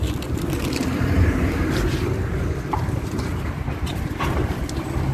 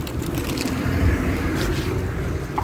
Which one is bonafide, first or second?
second